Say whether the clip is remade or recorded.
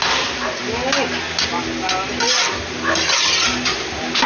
recorded